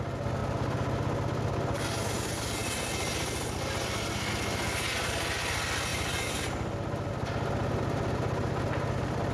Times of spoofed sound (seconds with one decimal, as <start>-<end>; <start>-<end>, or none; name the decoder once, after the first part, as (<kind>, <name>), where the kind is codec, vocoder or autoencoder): 5.9-7.1 (vocoder, BigVGAN v2)

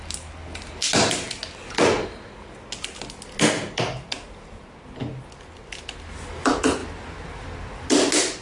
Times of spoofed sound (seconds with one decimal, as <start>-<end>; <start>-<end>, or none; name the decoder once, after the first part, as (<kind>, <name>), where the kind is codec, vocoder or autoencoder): none